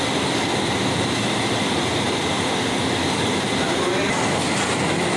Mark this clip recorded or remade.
recorded